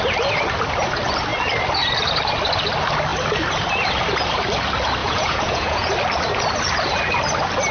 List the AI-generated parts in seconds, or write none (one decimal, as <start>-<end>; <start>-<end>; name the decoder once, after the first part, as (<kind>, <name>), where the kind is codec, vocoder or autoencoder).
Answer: 5.0-5.9 (vocoder, Vocos)

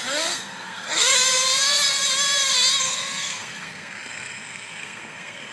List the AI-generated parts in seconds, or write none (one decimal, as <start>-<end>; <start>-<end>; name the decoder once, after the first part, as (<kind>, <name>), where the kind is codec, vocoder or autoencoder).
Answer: 0.0-1.1 (codec, SNAC); 2.8-5.5

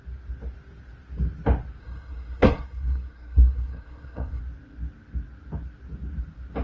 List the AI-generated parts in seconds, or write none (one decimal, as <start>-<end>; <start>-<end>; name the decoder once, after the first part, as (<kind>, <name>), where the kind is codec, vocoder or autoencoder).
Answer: 1.8-4.4 (codec, SNAC)

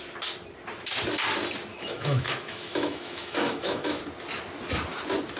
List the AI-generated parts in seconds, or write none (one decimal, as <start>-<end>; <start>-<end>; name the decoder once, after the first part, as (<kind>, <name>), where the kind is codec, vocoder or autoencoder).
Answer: 1.7-4.0 (autoencoder, DAC-VAE)

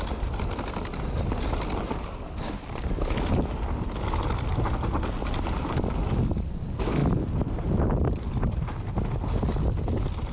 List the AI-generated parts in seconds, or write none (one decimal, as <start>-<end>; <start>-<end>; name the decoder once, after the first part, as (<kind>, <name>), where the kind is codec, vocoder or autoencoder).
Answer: none

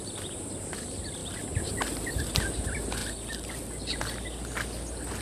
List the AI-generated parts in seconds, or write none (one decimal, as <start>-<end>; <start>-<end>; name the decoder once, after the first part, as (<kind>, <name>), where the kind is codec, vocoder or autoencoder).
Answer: 1.2-1.8 (vocoder, BigVGAN v2); 3.0-4.0

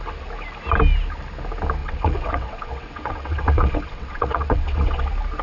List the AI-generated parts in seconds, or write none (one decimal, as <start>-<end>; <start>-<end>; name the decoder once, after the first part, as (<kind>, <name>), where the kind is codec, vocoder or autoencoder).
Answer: 1.8-5.0 (vocoder, WaveNeXt)

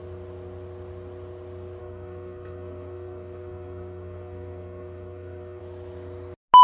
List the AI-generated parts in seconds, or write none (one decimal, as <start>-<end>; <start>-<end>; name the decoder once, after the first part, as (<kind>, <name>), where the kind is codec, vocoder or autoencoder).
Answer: 1.8-5.6 (codec, SNAC)